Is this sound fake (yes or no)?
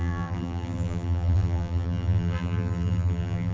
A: yes